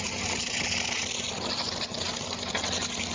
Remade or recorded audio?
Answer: recorded